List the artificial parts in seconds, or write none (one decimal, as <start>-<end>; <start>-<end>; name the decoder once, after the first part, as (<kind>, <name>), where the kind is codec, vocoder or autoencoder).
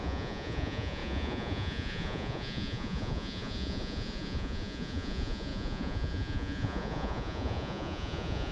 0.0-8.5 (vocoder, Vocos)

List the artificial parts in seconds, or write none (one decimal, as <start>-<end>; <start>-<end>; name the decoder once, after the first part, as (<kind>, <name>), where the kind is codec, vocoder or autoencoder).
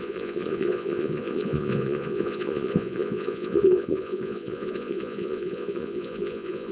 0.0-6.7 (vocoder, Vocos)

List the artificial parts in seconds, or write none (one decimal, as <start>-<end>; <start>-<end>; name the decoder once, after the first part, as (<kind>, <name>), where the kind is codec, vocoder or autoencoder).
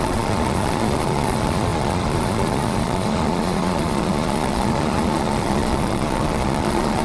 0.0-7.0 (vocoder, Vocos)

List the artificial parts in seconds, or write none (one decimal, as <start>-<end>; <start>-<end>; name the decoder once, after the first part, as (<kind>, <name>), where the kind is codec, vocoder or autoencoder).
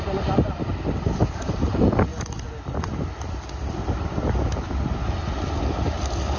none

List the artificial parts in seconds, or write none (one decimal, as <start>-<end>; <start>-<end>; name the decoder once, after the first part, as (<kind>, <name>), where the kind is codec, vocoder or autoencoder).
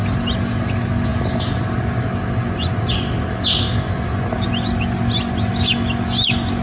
none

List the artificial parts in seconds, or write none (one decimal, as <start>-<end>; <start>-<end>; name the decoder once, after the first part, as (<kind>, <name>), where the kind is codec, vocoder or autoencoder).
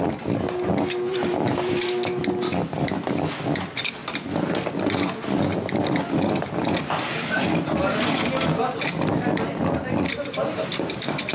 1.1-2.2 (vocoder, BigVGAN v2); 10.7-11.3